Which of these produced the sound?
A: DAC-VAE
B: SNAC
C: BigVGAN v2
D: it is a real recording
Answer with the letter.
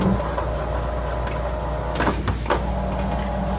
D